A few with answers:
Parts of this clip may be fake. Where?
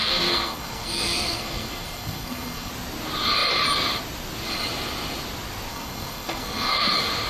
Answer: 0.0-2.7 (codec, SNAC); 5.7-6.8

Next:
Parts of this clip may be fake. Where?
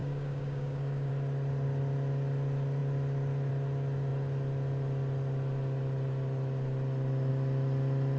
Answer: 0.0-1.1 (codec, DAC)